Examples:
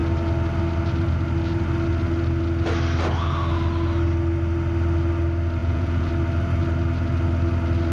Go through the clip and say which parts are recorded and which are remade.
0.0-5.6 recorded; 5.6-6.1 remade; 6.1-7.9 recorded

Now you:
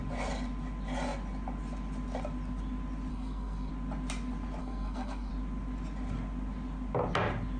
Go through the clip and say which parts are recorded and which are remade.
0.0-3.1 recorded; 3.1-3.7 remade; 3.7-4.6 recorded; 4.6-5.3 remade; 5.3-7.6 recorded

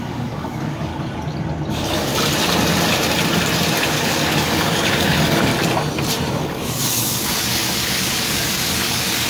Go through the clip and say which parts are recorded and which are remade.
0.0-0.9 remade; 0.9-1.7 recorded; 1.7-2.1 remade; 2.1-3.8 recorded; 3.8-5.5 remade; 5.5-6.4 recorded; 6.4-9.3 remade

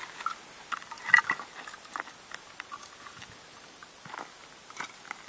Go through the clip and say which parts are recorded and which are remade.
0.0-5.3 recorded